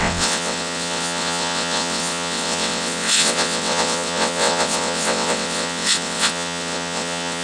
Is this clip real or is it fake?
fake